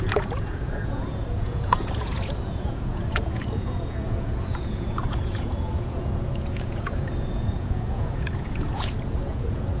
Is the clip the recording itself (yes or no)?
no